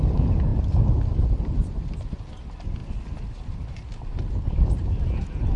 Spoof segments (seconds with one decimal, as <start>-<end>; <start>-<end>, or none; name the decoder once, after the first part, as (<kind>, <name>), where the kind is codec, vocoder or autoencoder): none